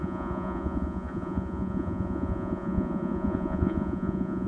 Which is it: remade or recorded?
remade